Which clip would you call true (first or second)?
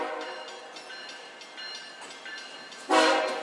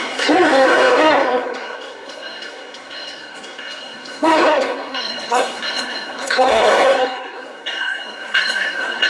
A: first